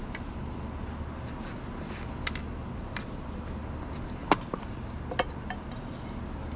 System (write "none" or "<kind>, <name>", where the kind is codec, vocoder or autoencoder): none